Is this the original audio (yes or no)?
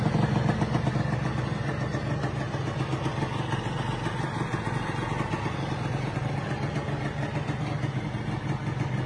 yes